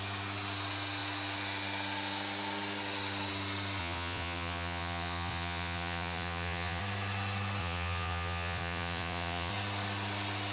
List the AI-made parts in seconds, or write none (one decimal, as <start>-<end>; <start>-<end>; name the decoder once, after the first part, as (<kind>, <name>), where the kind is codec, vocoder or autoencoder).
3.8-6.8 (vocoder, Vocos); 7.6-9.5